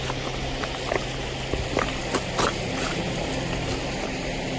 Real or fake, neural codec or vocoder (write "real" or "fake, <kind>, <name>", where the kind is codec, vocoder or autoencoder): real